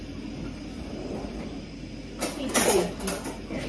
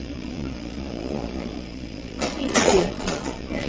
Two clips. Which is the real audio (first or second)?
first